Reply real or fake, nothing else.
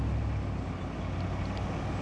real